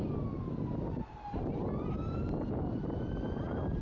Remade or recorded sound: recorded